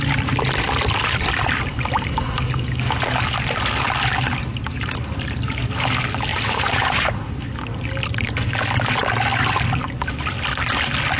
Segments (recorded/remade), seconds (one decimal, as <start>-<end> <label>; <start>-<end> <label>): 0.0-6.3 recorded; 6.3-7.3 remade; 7.3-11.2 recorded